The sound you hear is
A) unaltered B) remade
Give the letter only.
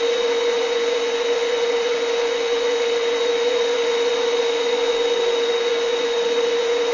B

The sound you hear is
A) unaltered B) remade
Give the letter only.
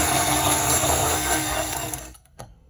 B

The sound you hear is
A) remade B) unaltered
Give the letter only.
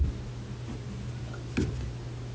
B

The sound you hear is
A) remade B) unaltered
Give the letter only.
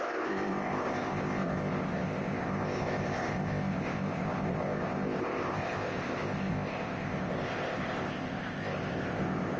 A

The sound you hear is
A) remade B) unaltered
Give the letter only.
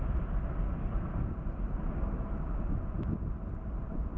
B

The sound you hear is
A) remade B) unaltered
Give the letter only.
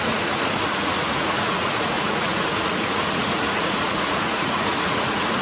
A